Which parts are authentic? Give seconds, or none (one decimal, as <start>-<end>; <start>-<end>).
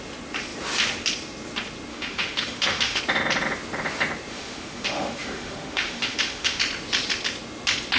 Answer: 0.0-1.9; 3.0-4.3; 6.6-8.0